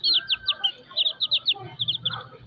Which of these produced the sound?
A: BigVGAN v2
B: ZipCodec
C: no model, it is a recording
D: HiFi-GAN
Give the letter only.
C